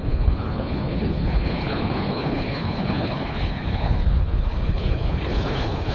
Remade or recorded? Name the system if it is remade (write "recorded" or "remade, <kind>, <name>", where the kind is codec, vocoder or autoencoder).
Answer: remade, codec, HILCodec